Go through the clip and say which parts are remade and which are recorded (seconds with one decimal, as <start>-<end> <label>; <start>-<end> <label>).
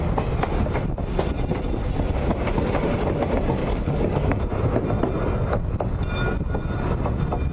0.0-3.6 recorded; 3.6-4.4 remade; 4.4-7.5 recorded